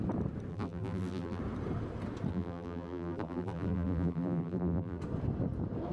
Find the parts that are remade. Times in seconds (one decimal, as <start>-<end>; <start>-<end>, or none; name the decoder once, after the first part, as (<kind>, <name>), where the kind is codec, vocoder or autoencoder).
0.5-1.4 (vocoder, BigVGAN v2); 2.3-5.0